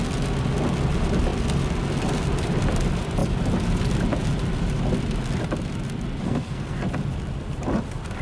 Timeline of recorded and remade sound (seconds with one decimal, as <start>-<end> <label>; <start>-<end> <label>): 0.0-6.2 recorded; 6.2-6.8 remade; 6.8-8.2 recorded